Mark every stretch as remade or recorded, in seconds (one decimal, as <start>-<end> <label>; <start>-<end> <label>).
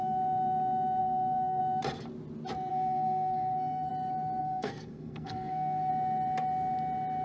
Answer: 0.0-1.0 recorded; 1.0-1.6 remade; 1.6-2.7 recorded; 2.7-3.9 remade; 3.9-4.4 recorded; 4.4-5.9 remade; 5.9-7.2 recorded